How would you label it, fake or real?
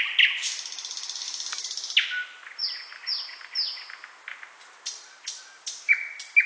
real